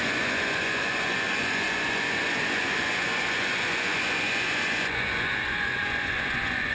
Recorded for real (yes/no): no